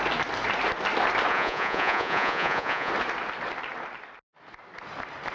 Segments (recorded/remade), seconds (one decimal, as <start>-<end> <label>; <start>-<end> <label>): 0.0-1.3 recorded; 1.3-2.9 remade; 2.9-5.3 recorded

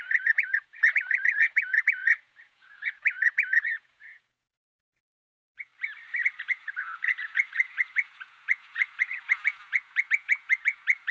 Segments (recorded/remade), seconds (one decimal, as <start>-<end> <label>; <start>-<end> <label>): 0.0-5.7 remade; 5.7-6.4 recorded; 6.4-11.1 remade

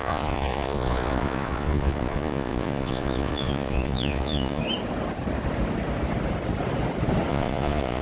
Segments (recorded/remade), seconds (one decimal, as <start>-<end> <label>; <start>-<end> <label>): 0.0-4.6 remade; 4.6-7.3 recorded; 7.3-8.0 remade

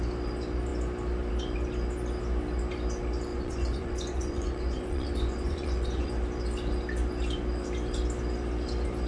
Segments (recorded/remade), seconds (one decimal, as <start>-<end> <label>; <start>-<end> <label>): 0.0-3.3 recorded; 3.3-6.1 remade; 6.1-9.1 recorded